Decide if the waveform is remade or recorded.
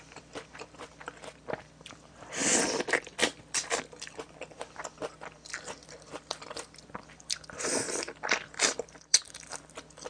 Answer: remade